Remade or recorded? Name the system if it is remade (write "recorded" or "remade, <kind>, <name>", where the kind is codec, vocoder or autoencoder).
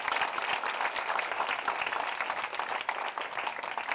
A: recorded